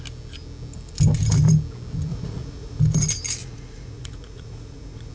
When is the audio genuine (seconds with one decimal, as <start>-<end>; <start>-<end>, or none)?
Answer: 0.0-2.1; 2.8-3.4

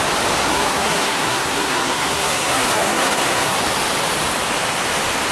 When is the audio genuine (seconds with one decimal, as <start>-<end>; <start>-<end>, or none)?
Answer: 0.0-0.4; 3.6-5.3